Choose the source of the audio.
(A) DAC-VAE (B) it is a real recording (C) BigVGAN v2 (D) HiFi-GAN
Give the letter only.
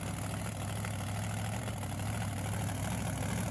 B